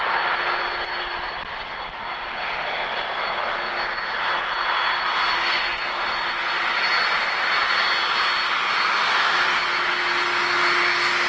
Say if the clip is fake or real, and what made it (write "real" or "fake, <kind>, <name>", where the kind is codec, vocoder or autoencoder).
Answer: real